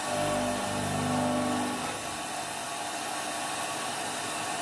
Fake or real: real